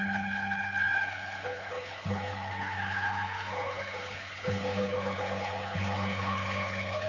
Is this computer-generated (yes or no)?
yes